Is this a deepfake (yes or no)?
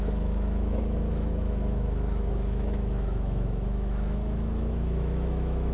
yes